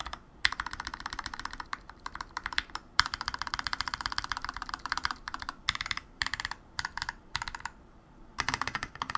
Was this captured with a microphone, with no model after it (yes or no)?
no